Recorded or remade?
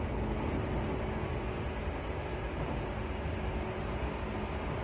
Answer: recorded